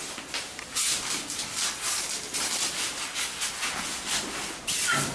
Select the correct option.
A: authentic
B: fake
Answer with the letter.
A